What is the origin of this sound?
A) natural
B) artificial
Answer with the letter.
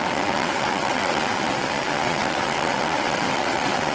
B